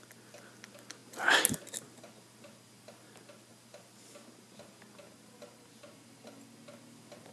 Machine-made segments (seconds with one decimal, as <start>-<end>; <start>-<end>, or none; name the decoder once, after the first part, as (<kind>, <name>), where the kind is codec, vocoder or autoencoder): none